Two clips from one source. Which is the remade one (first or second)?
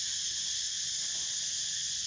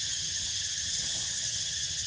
second